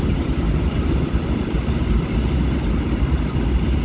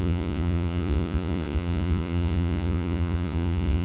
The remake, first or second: second